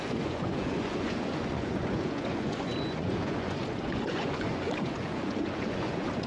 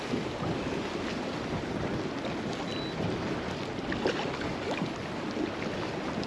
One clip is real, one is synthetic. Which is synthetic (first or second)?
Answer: first